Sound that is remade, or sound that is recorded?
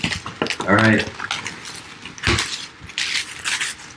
recorded